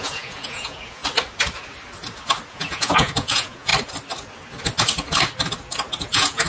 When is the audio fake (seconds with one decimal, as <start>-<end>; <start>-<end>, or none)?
0.0-1.0; 2.5-3.7; 6.0-6.5